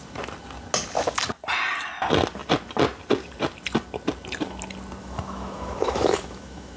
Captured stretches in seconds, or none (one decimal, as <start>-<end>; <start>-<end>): 0.0-5.0